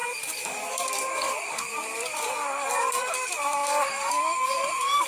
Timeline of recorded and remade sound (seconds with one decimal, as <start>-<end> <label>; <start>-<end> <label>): 0.0-5.1 remade